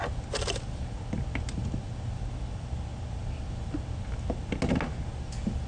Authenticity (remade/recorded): recorded